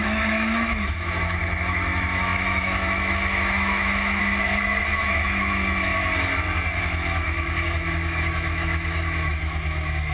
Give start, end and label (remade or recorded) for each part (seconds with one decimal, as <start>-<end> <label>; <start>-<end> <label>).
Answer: 0.0-5.9 remade; 5.9-6.8 recorded; 6.8-10.1 remade